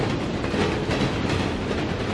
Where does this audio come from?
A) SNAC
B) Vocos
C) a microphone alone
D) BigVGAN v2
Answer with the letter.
C